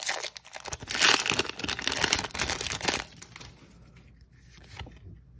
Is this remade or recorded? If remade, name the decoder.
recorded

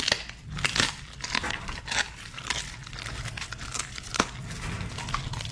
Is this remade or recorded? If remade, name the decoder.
recorded